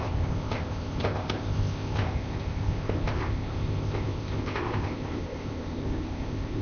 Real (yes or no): no